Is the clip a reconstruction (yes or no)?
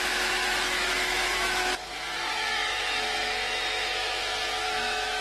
yes